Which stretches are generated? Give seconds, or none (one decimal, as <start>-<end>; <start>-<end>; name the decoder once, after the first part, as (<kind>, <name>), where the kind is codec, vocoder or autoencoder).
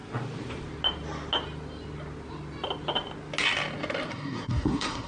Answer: 4.1-5.1 (codec, SNAC)